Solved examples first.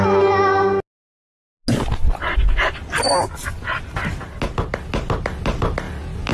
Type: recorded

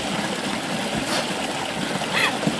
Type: recorded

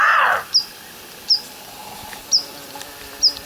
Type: recorded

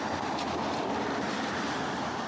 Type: remade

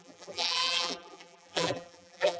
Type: remade